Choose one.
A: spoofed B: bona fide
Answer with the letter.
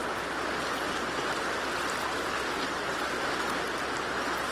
B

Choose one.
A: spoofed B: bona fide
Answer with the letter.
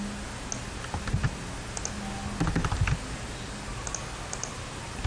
B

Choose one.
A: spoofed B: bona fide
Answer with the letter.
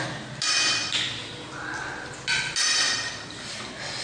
B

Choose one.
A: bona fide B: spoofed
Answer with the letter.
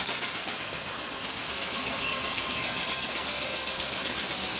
B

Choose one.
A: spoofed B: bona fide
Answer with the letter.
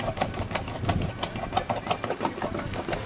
B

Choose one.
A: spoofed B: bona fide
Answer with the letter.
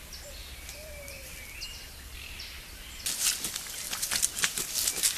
B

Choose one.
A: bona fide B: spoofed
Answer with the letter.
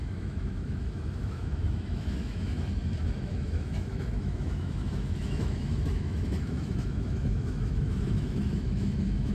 B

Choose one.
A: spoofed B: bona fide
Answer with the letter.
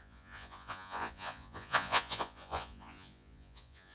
A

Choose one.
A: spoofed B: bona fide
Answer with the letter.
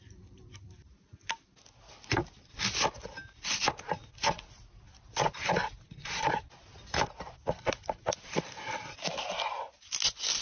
B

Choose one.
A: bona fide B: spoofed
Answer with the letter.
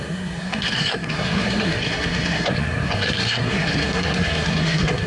B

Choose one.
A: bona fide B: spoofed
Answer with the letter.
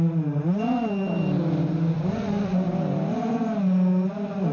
A